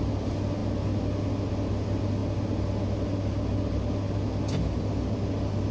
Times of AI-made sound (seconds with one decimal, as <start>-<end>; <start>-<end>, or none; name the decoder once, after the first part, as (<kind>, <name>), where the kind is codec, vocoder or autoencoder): none